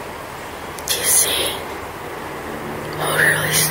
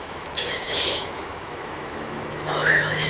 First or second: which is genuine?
first